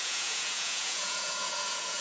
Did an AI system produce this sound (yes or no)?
yes